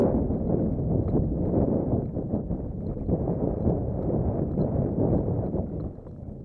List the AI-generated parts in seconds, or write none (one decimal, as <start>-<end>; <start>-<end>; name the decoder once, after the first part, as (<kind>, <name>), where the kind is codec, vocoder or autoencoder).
0.0-6.4 (vocoder, BigVGAN v2)